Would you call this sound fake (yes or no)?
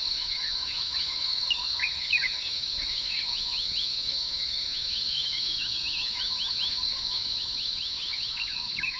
yes